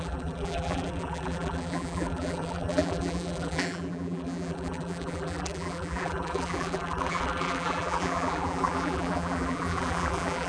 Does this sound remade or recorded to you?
remade